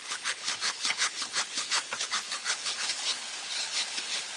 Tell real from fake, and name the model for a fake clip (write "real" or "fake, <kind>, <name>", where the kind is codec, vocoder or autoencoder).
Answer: fake, codec, HILCodec